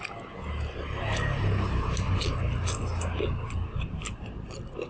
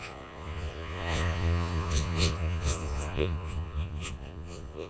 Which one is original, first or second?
first